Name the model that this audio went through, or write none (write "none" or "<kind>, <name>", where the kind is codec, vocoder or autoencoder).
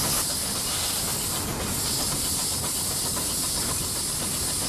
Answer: none